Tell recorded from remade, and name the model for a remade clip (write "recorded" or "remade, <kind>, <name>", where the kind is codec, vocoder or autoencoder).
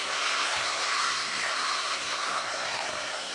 remade, codec, SNAC